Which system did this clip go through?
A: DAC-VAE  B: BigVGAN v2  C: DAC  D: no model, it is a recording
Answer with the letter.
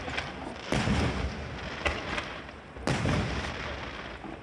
D